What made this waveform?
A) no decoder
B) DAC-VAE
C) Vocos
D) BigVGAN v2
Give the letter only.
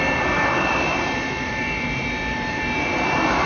D